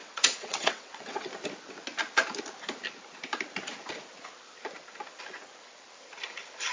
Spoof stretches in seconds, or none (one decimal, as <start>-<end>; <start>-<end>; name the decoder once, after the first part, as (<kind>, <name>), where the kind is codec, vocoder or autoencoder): 0.0-1.3 (vocoder, WaveNeXt)

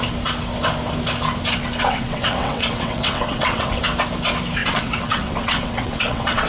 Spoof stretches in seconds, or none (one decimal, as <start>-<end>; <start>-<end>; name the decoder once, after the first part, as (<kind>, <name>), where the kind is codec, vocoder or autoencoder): 1.8-3.8 (vocoder, WaveNeXt); 4.6-6.5

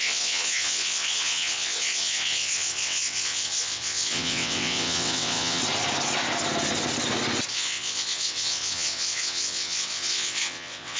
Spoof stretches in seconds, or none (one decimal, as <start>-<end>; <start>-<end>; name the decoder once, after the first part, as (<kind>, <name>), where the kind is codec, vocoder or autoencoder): 0.0-5.6 (vocoder, WaveNeXt); 7.5-11.0

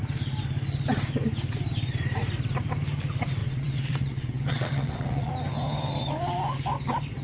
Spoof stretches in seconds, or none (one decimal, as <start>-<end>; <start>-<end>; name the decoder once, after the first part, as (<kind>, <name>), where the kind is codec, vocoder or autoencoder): 3.4-5.3 (vocoder, WaveNeXt)